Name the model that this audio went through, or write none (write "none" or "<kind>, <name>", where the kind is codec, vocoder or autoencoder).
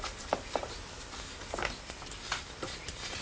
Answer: none